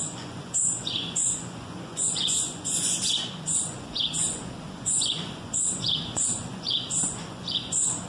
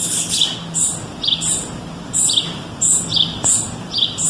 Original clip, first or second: second